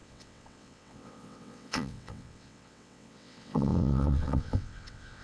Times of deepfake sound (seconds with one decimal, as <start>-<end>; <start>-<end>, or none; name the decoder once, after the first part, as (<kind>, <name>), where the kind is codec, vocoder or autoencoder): 0.0-5.2 (vocoder, WaveNeXt)